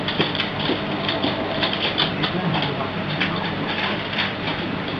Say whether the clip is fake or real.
fake